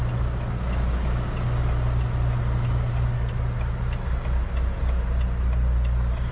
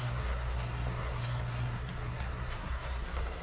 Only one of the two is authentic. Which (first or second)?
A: first